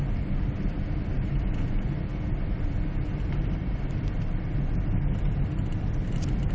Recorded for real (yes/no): yes